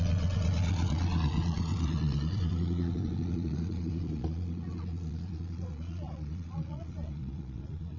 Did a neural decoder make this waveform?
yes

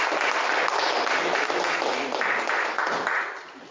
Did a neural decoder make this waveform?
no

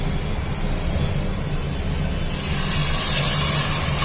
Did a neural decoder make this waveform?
no